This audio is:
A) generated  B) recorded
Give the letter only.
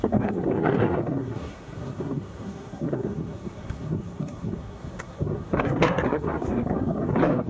A